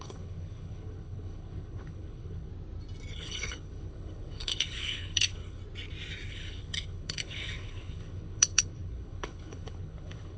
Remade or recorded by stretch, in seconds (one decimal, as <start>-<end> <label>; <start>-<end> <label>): 0.0-2.5 remade; 2.5-3.1 recorded; 3.1-5.6 remade; 5.6-6.3 recorded; 6.3-10.4 remade